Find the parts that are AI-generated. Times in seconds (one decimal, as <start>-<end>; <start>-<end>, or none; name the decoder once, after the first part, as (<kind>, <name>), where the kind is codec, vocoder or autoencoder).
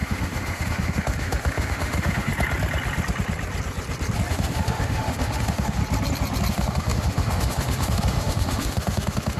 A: 0.0-2.3 (autoencoder, DAC-VAE); 4.3-5.8; 6.5-9.4